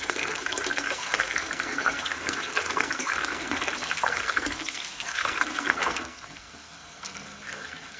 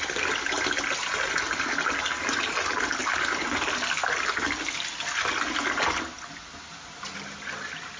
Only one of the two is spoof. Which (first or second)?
first